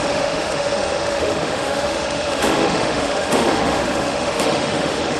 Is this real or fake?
fake